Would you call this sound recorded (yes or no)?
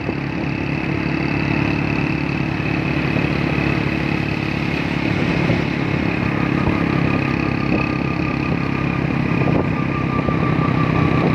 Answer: yes